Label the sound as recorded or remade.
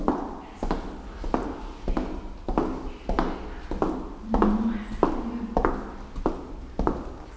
recorded